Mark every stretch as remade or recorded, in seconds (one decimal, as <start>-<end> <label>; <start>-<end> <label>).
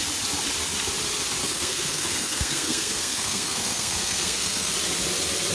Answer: 0.0-1.4 recorded; 1.4-4.7 remade; 4.7-5.5 recorded